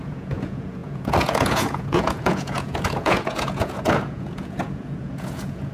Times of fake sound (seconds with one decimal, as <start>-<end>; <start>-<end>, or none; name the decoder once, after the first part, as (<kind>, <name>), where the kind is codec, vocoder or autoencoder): 0.0-5.7 (vocoder, Vocos)